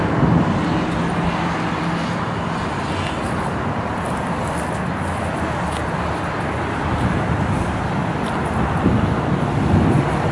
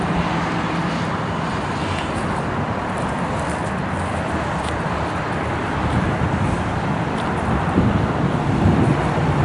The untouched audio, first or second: first